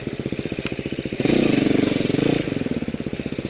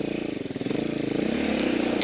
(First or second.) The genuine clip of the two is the second